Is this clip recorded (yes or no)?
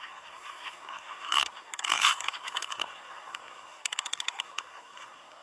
no